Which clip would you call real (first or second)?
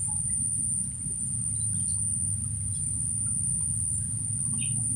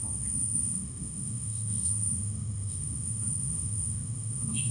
first